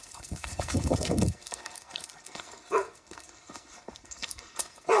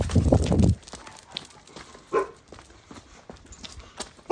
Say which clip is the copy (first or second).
first